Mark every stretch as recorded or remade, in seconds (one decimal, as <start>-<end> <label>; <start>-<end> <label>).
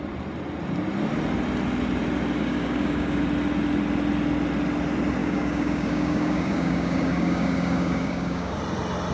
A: 0.0-2.4 recorded; 2.4-3.2 remade; 3.2-5.2 recorded; 5.2-8.6 remade; 8.6-9.1 recorded